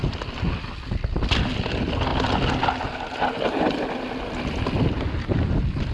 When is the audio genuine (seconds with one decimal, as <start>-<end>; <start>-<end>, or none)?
0.0-5.9